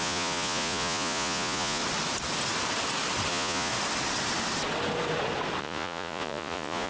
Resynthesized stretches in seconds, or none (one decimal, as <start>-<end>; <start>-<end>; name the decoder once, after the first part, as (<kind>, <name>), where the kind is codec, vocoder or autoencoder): 0.0-1.8 (vocoder, Vocos); 3.3-3.7; 5.6-6.9